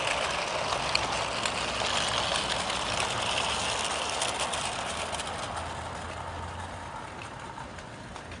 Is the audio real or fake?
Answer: real